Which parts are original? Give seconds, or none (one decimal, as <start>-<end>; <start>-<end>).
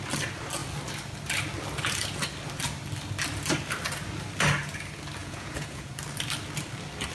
0.0-5.2; 5.9-7.1